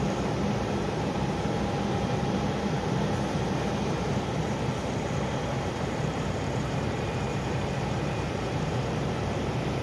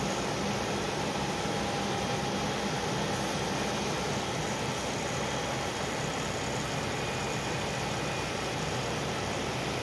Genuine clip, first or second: second